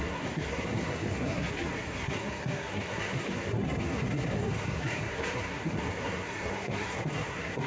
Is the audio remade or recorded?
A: remade